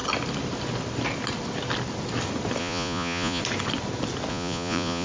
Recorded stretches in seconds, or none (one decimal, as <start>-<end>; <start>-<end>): 0.0-2.6; 3.4-4.3